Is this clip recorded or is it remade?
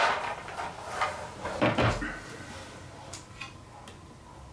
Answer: recorded